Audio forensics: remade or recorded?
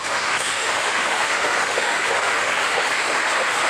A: remade